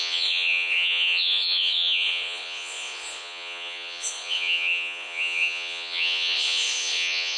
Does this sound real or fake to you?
fake